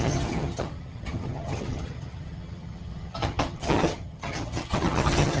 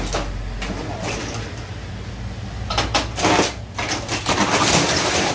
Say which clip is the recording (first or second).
second